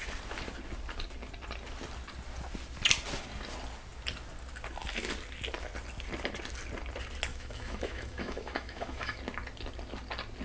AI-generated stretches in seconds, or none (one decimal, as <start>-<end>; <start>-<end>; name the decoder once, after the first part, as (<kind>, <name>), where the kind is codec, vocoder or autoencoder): 7.3-9.2 (autoencoder, DAC-VAE)